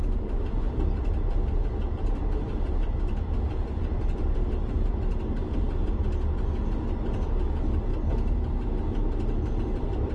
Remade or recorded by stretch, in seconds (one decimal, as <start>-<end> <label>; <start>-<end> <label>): 0.0-7.9 remade; 7.9-9.6 recorded; 9.6-10.1 remade